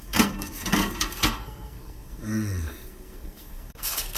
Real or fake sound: fake